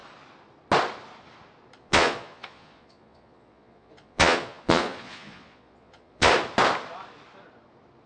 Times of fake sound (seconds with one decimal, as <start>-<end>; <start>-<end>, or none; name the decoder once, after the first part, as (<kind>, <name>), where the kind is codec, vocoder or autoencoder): 1.8-6.3 (vocoder, Vocos)